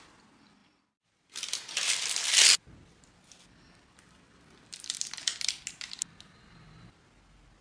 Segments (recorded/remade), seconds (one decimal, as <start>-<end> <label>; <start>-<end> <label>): 0.0-7.6 recorded